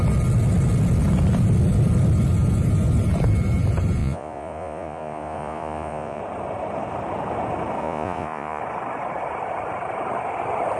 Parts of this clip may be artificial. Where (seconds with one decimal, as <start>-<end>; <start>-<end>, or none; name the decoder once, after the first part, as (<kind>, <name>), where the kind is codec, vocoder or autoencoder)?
4.0-6.2 (vocoder, Vocos); 7.8-8.6